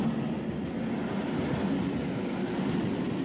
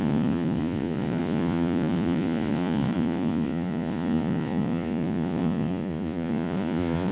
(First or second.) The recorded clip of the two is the first